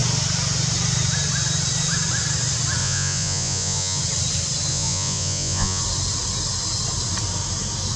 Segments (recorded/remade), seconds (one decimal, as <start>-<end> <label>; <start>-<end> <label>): 0.0-2.8 recorded; 2.8-4.0 remade; 4.0-4.7 recorded; 4.7-5.8 remade; 5.8-8.0 recorded

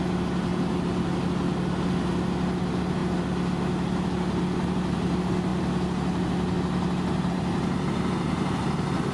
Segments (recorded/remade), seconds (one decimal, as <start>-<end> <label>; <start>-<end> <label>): 0.0-9.1 recorded

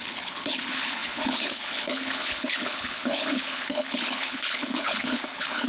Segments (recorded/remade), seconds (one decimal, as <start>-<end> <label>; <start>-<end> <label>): 0.0-5.7 remade

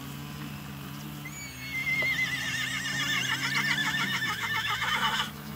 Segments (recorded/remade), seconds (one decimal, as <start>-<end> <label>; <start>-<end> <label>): 0.0-3.8 recorded; 3.8-5.6 remade

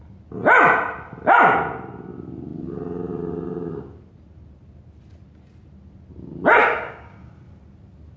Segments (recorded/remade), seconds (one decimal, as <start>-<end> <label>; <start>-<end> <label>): 0.0-6.6 recorded; 6.6-7.3 remade; 7.3-8.2 recorded

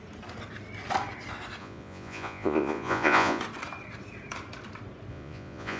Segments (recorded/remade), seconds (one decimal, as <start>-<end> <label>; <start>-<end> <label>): 0.0-1.6 recorded; 1.6-3.4 remade; 3.4-5.1 recorded; 5.1-5.8 remade